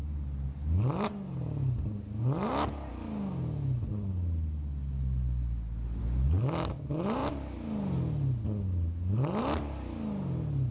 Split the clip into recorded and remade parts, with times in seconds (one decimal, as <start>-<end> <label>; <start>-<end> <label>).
0.0-10.7 recorded